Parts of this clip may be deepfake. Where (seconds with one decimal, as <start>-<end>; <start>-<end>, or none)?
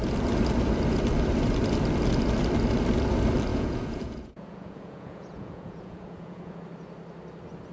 3.5-6.6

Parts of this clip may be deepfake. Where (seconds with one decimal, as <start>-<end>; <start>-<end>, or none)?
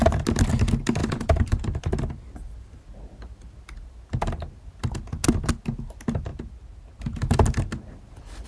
1.0-1.8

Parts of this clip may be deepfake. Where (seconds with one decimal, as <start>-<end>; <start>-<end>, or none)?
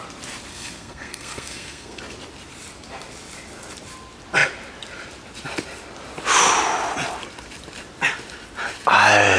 0.5-2.0